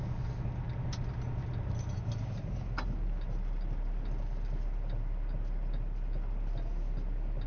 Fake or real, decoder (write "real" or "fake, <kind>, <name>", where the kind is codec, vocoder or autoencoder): real